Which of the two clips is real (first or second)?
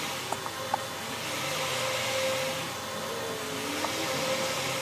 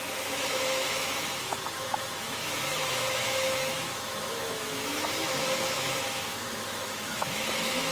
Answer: first